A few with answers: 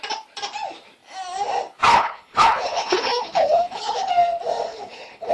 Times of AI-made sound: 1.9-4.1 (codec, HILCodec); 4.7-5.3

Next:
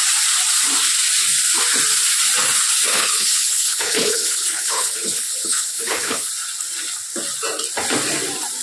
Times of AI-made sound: 2.9-6.3 (codec, HILCodec)